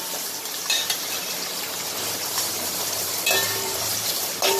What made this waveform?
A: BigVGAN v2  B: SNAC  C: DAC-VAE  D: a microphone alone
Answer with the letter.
A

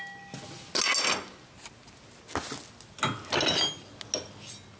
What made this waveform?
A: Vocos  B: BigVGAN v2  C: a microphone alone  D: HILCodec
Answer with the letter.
C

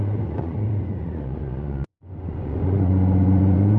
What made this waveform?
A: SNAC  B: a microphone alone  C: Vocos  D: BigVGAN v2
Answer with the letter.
C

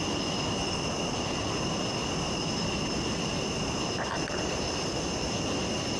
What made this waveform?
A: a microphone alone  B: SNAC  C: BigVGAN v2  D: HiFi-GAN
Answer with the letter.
C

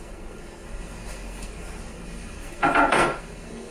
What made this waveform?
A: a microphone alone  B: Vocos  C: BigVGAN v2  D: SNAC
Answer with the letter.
D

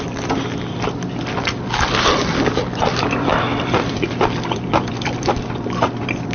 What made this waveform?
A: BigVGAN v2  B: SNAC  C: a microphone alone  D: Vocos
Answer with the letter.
A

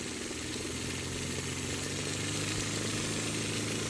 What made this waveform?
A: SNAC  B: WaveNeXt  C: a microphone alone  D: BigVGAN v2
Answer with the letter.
C